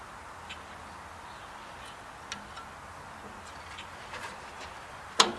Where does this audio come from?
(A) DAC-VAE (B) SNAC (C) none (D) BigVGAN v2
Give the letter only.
C